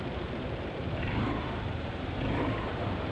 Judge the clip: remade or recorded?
remade